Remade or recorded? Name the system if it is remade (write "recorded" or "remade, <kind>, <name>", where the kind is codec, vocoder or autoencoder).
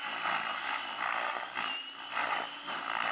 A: recorded